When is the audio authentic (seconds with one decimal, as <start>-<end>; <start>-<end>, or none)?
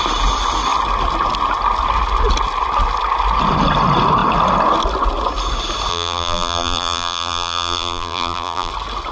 0.0-5.9; 8.7-9.1